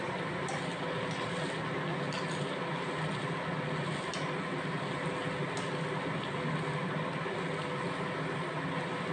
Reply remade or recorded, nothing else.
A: recorded